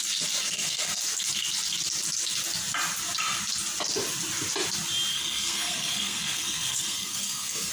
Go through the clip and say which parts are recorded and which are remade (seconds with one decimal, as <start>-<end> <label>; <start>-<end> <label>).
0.0-0.4 recorded; 0.4-1.0 remade; 1.0-5.1 recorded; 5.1-7.7 remade